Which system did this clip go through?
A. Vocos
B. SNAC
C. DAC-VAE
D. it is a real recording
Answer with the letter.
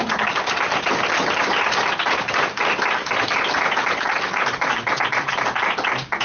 D